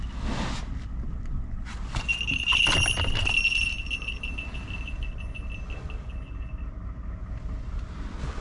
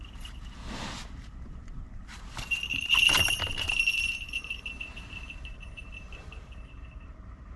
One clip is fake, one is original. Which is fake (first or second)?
second